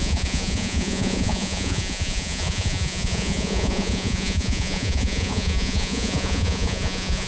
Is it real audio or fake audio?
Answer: fake